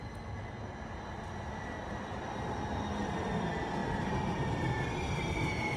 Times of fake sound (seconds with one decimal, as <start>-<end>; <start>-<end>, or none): 3.8-4.5